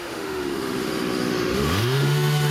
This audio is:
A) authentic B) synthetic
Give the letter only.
B